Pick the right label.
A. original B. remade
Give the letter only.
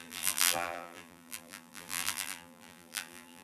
B